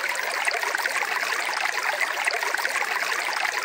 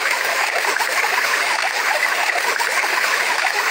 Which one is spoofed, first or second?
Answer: second